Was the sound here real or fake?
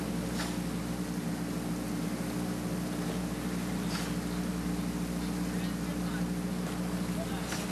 real